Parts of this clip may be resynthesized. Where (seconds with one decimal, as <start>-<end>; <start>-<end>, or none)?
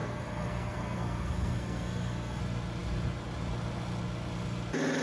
0.0-2.4